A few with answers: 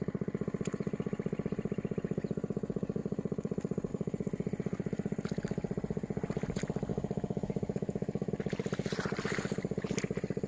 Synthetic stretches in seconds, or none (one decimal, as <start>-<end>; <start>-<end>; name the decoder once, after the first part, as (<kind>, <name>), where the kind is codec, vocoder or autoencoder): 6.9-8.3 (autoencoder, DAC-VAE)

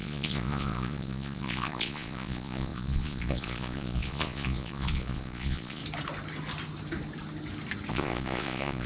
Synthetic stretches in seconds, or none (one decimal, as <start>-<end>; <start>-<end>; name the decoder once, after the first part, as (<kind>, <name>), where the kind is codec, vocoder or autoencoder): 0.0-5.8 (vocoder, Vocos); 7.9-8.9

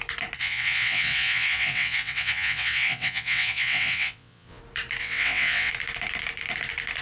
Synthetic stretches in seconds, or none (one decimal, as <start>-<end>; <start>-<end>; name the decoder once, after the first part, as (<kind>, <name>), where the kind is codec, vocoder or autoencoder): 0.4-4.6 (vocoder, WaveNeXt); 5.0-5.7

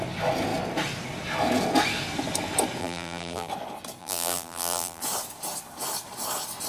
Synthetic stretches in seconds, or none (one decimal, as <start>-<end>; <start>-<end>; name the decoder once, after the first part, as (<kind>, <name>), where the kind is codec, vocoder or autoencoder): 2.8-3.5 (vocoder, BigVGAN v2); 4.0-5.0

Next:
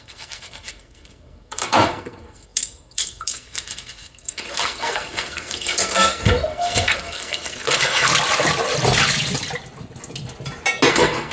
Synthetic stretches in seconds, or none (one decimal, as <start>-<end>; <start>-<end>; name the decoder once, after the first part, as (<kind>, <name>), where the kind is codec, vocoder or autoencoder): 0.0-8.1 (codec, SNAC); 10.9-11.3

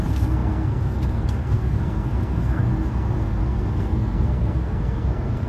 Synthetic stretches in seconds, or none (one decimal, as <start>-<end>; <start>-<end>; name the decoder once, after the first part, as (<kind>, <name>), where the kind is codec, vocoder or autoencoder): 0.0-5.5 (codec, SNAC)

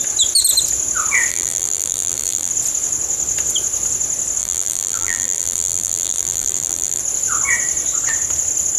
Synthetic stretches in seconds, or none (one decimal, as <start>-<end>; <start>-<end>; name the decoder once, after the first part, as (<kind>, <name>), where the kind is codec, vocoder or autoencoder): 1.3-2.5 (vocoder, BigVGAN v2); 4.4-7.0